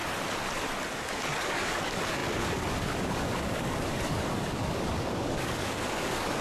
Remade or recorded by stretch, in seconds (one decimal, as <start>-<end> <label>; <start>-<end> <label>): 0.0-0.9 recorded; 0.9-6.4 remade